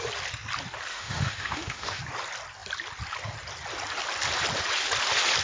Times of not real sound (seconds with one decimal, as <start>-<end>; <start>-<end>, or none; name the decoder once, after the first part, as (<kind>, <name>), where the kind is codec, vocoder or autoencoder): 0.9-2.0 (autoencoder, DAC-VAE)